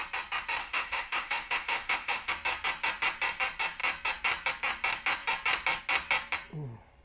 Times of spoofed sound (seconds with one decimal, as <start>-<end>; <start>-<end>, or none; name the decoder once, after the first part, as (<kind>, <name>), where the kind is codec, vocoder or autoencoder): 0.6-2.3 (autoencoder, DAC-VAE)